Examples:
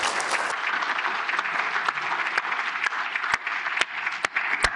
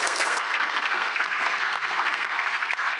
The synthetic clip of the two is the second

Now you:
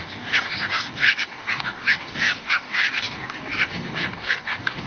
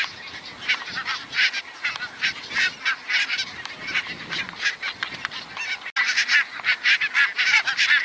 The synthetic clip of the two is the first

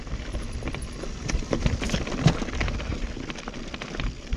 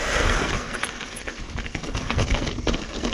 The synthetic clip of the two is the second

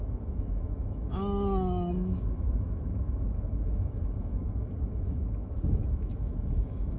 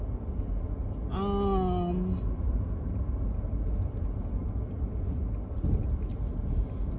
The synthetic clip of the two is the first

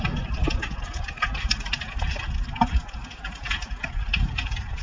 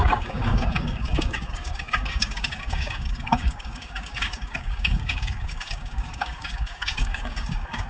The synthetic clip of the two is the second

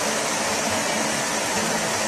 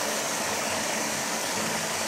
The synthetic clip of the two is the second